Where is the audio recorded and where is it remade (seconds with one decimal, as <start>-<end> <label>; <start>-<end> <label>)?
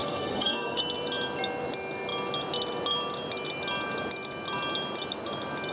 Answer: 0.0-0.8 remade; 0.8-5.7 recorded